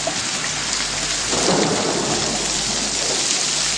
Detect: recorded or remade recorded